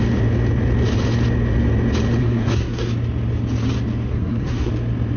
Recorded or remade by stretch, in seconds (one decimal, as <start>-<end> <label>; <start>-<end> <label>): 0.0-2.2 recorded; 2.2-2.9 remade; 2.9-4.1 recorded; 4.1-4.7 remade; 4.7-5.2 recorded